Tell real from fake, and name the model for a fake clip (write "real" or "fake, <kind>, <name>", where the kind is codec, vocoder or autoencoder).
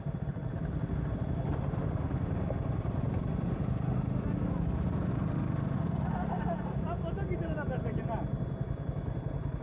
real